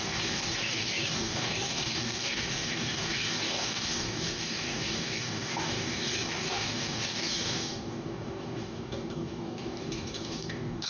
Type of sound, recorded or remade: remade